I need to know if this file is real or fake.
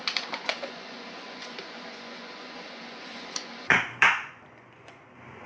fake